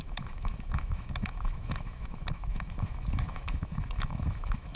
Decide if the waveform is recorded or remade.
remade